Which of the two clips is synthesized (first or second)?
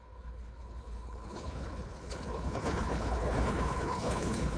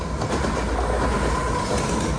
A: first